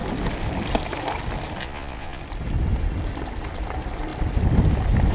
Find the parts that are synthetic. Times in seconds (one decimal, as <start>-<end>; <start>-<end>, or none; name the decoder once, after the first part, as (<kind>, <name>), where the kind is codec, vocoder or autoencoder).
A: 1.6-2.2 (vocoder, Vocos)